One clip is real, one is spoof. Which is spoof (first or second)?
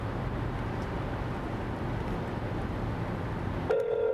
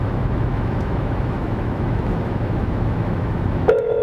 second